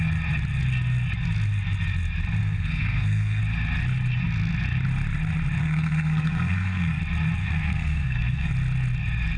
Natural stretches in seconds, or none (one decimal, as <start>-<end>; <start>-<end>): 0.0-2.4; 3.4-5.6; 7.0-7.4; 8.5-9.4